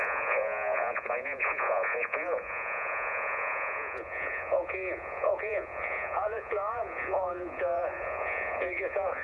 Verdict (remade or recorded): remade